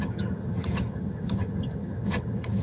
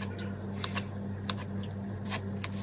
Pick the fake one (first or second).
first